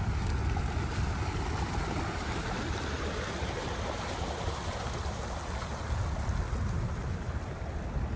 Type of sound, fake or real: real